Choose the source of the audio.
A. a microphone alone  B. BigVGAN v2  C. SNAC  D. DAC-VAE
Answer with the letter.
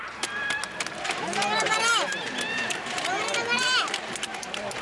A